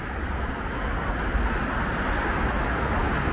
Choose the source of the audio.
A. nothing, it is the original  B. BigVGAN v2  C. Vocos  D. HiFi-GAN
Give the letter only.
A